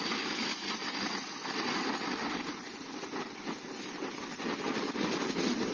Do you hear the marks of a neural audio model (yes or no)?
no